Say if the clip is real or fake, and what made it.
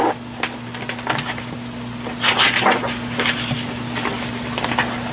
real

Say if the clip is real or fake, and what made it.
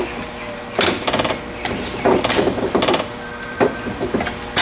real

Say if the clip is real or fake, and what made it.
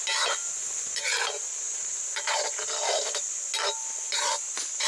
real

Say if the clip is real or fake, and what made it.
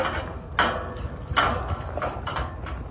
real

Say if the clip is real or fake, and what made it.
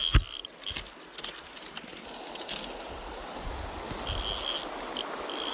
real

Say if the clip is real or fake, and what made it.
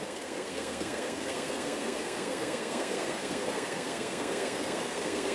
fake, codec, SNAC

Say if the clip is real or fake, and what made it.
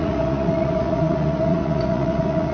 fake, vocoder, Vocos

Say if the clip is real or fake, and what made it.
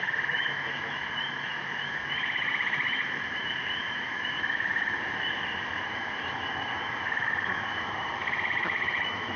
fake, autoencoder, DAC-VAE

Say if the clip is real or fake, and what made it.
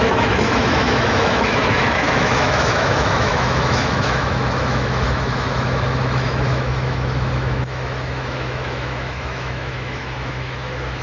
fake, autoencoder, DAC-VAE